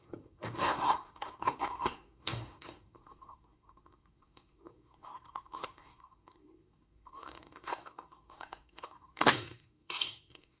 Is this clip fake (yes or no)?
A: yes